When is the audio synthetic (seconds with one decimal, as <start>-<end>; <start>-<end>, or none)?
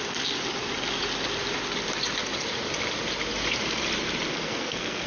4.3-5.1